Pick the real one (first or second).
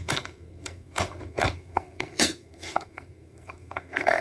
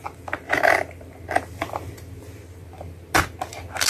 second